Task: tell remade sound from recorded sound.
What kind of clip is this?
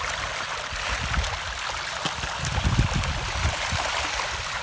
recorded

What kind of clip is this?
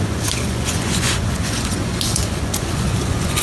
remade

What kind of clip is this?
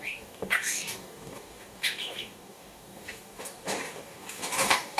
remade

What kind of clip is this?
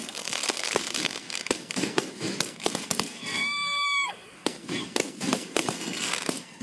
remade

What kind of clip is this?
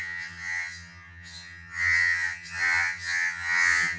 remade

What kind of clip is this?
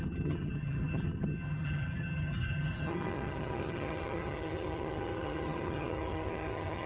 remade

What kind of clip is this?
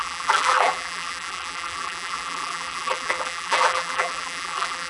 remade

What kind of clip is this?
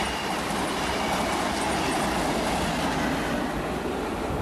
recorded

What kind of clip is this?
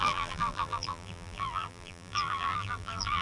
remade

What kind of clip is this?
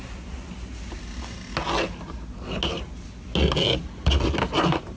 recorded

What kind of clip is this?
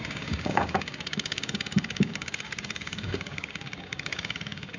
remade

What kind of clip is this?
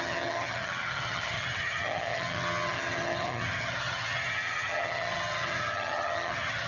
remade